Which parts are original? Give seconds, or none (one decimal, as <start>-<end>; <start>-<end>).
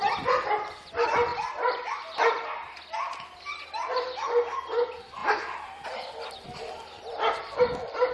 0.0-8.1